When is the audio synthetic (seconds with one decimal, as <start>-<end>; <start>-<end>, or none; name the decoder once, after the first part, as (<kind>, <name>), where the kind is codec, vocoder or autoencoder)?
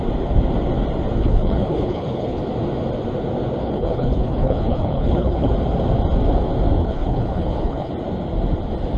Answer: 1.2-2.4 (codec, HILCodec); 3.6-5.5; 6.8-7.9